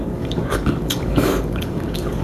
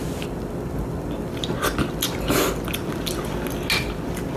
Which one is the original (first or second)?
second